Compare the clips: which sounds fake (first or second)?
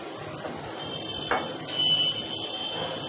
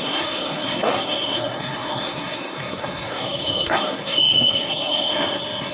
second